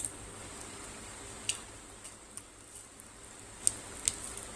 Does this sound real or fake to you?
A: real